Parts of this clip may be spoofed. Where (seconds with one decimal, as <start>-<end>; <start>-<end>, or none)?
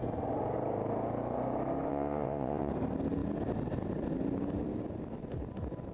1.9-2.7